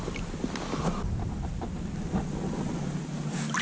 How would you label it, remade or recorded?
recorded